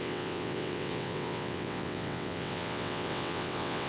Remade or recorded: remade